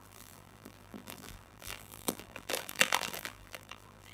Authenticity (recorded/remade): remade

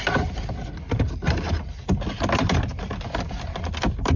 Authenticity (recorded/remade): recorded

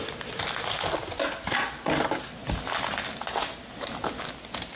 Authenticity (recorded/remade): recorded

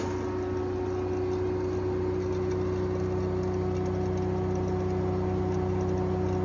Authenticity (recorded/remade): recorded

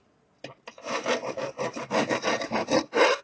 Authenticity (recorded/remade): recorded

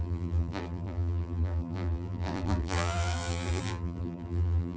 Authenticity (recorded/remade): remade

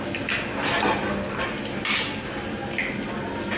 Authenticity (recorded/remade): recorded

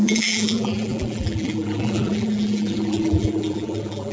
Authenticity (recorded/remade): remade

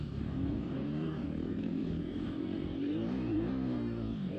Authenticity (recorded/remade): remade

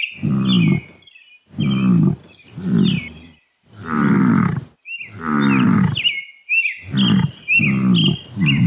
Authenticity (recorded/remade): recorded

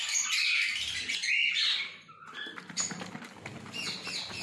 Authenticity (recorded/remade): recorded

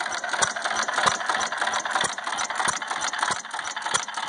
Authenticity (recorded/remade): recorded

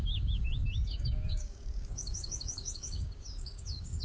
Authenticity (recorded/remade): remade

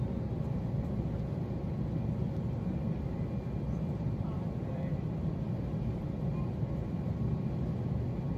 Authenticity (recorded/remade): recorded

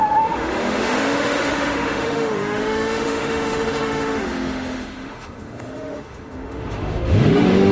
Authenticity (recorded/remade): remade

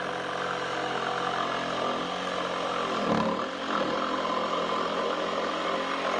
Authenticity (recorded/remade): recorded